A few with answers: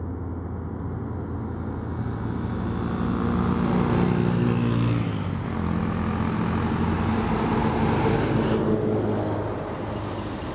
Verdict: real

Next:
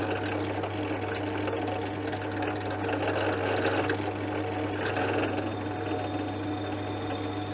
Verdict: real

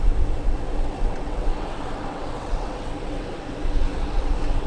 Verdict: fake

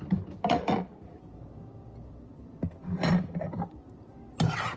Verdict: real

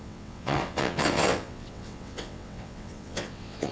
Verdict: fake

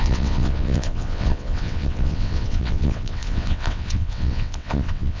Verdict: fake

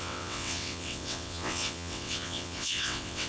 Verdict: fake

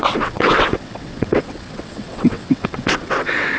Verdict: fake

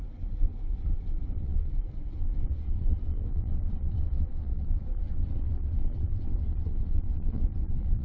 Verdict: fake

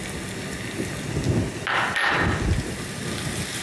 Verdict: real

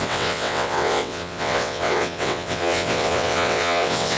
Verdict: fake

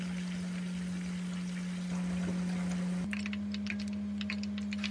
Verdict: real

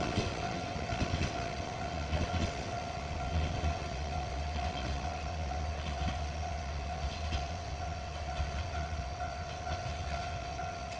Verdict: fake